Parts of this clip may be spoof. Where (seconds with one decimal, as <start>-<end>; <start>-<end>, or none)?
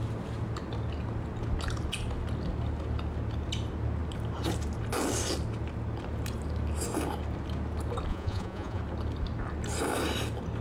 8.1-8.8